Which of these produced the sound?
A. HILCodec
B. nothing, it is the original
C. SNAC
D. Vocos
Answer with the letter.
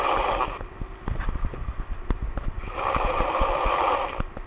B